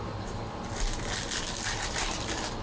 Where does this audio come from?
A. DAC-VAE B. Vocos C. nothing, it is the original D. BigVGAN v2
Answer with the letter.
C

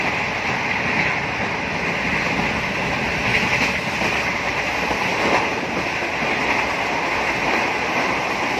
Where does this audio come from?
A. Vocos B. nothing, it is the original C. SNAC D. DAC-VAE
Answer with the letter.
B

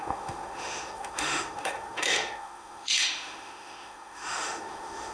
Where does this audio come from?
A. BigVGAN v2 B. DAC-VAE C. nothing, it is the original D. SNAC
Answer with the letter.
B